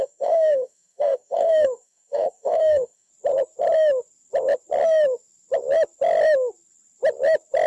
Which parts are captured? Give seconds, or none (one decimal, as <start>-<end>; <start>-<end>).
3.1-7.7